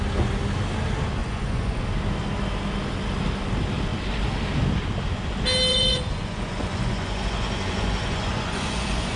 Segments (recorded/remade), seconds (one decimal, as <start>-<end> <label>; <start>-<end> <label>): 0.0-1.2 recorded; 1.2-1.8 remade; 1.8-5.7 recorded; 5.7-9.2 remade